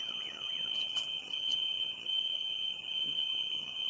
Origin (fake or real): fake